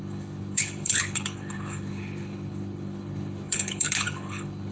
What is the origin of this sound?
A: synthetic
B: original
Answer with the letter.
A